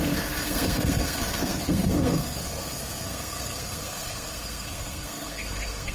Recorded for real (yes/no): no